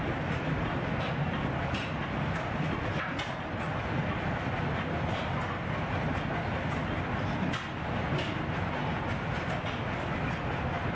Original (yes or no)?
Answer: yes